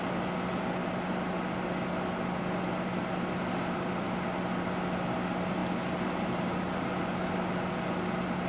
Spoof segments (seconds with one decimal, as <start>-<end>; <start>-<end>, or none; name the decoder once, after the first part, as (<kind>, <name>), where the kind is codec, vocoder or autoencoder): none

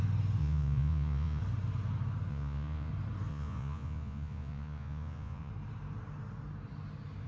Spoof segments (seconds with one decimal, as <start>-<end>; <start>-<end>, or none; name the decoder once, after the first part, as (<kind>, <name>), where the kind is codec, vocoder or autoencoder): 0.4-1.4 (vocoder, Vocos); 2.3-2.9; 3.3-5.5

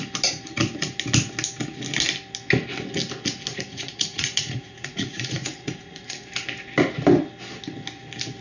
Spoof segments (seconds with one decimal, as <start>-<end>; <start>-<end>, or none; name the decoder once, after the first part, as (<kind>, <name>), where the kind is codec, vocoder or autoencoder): 3.5-6.3 (vocoder, Vocos)

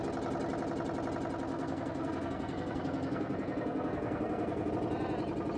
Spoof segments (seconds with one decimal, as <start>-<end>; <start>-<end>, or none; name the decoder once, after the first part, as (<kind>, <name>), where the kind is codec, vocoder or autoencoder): 1.5-4.7 (codec, SNAC)

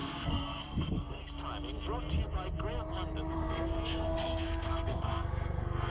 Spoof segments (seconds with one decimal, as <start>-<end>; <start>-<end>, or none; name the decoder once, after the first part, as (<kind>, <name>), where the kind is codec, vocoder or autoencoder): 0.0-1.2 (codec, SNAC); 3.3-5.9

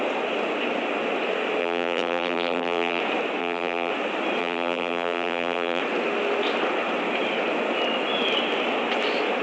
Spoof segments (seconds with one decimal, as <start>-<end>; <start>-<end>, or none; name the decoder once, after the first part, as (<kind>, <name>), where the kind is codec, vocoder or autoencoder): 1.6-3.0 (vocoder, BigVGAN v2); 3.4-3.9; 4.4-5.8

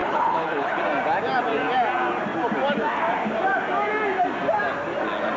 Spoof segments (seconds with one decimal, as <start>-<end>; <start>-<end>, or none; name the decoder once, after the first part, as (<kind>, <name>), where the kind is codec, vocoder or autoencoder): 0.0-0.8 (codec, HILCodec)

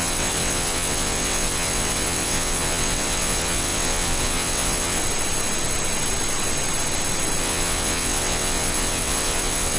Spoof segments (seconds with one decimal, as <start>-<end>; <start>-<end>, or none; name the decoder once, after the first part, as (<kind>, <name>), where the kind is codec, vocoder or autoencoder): 0.0-5.0 (vocoder, WaveNeXt); 7.4-9.8